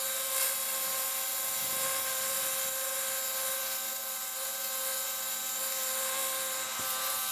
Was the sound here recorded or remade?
recorded